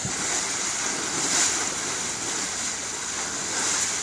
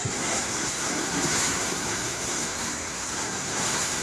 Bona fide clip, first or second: first